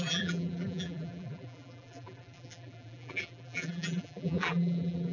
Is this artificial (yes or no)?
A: yes